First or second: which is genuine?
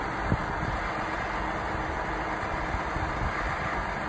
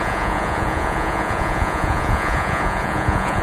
first